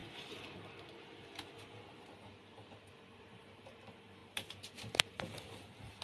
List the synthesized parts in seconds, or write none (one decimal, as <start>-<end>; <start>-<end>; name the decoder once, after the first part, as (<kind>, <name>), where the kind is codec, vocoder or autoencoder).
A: 4.2-6.0 (vocoder, BigVGAN v2)